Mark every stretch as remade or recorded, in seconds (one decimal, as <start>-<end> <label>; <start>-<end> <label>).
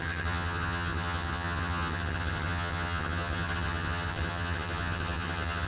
0.0-5.7 remade